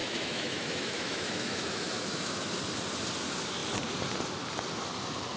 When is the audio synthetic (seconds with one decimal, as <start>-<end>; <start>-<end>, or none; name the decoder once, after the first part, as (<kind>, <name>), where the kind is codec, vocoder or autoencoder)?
0.0-2.5 (autoencoder, DAC-VAE)